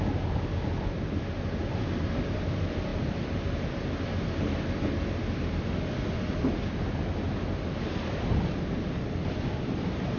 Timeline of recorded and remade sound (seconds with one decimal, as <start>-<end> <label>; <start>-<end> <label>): 0.0-10.2 recorded